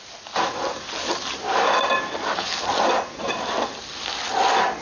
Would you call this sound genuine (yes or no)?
yes